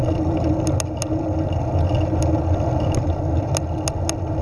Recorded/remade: recorded